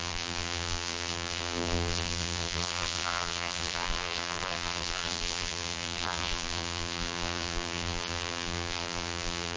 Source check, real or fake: fake